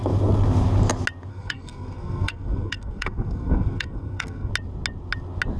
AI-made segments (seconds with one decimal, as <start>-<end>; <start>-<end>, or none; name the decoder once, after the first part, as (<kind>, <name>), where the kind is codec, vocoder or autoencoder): 1.3-4.5 (codec, SNAC)